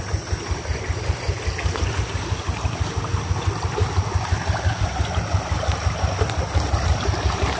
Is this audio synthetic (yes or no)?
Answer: no